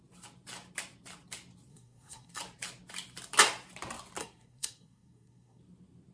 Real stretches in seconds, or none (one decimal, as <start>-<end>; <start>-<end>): 0.0-1.7; 2.4-4.2; 5.6-6.1